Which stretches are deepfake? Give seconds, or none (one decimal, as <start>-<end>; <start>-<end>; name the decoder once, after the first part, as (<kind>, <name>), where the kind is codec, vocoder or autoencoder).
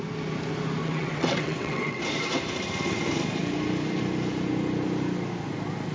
0.8-2.0 (vocoder, WaveNeXt)